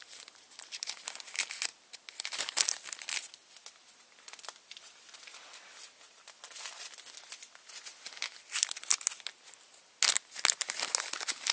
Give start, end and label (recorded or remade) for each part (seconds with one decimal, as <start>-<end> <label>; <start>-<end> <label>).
0.0-11.5 recorded